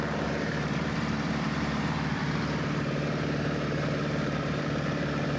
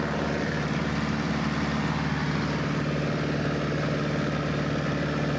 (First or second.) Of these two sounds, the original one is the second